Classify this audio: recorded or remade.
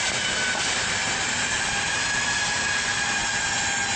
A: remade